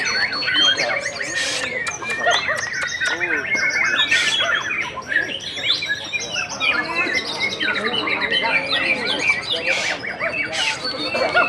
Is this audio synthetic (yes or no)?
no